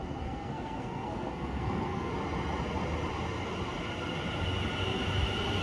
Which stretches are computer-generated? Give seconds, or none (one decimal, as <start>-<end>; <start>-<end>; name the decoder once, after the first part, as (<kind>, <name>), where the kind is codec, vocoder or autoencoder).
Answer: 0.0-2.1 (codec, SNAC)

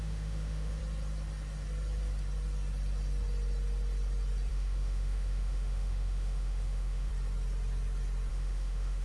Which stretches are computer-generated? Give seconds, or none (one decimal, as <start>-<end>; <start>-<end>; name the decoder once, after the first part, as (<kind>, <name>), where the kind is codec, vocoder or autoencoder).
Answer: 0.0-0.8 (autoencoder, DAC-VAE); 4.5-7.1; 8.3-9.0

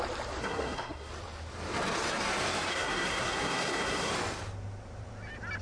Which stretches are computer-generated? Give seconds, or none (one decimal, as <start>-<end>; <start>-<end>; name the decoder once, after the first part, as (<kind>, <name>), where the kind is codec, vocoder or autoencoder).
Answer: 0.4-1.1 (codec, SNAC); 2.7-4.1

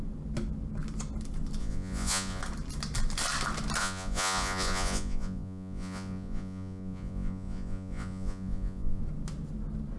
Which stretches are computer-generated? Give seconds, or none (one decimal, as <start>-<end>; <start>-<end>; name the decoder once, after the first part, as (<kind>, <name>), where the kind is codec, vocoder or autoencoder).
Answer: 1.6-2.4 (vocoder, Vocos); 3.8-9.0

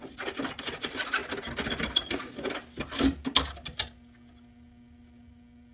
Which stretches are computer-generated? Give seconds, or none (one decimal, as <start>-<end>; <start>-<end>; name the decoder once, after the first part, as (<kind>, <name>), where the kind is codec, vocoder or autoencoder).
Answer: none